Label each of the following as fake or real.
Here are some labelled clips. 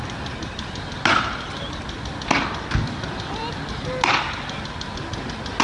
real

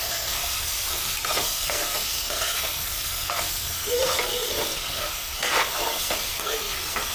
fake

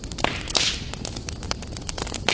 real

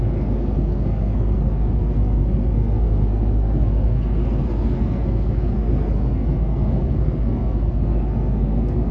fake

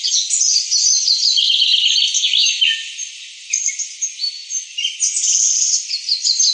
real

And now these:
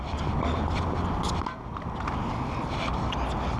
real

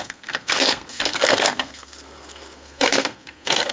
fake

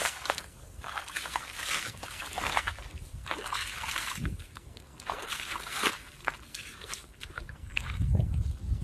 fake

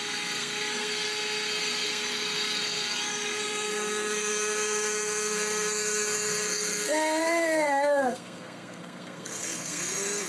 fake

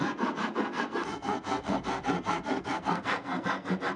fake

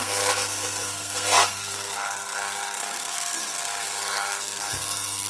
fake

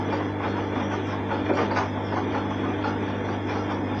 real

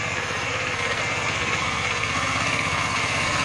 fake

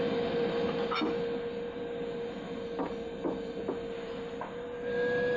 real